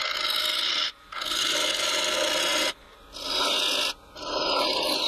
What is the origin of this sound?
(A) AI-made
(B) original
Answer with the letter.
B